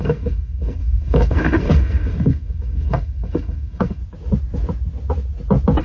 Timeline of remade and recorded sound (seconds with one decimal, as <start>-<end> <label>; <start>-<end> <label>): 0.0-4.0 remade; 4.0-5.8 recorded